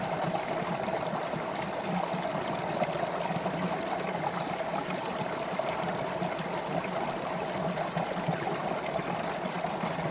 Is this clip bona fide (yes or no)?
yes